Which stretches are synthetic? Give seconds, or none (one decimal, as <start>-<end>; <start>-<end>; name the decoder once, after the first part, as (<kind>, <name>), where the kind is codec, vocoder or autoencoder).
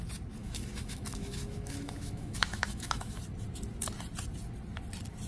0.4-3.2 (autoencoder, DAC-VAE)